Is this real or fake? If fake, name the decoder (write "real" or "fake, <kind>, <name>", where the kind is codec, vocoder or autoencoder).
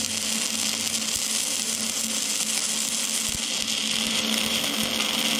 real